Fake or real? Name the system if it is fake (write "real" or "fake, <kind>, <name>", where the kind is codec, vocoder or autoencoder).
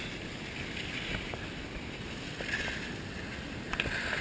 real